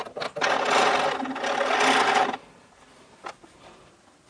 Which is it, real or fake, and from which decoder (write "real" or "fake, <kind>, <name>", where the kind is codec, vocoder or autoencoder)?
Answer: real